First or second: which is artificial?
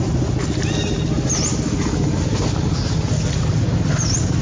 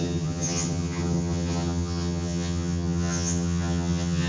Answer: second